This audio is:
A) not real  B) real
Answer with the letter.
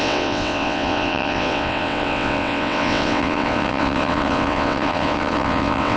A